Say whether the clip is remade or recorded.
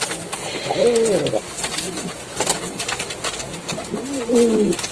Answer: recorded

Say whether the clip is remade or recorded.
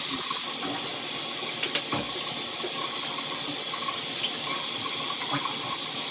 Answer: recorded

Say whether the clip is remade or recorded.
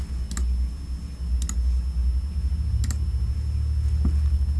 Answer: recorded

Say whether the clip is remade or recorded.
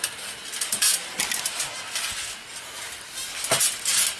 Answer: recorded